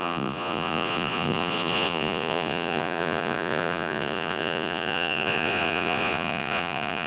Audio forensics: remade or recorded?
remade